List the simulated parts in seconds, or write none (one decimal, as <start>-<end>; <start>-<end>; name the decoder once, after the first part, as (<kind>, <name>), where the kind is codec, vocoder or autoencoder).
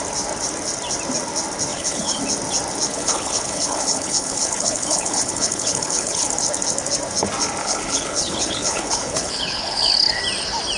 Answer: 1.7-2.2 (codec, HILCodec); 2.9-6.3; 7.6-10.2